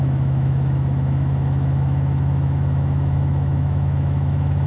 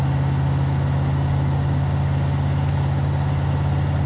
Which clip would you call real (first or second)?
second